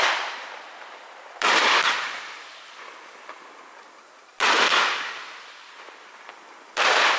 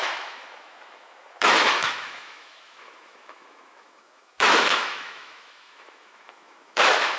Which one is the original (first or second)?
first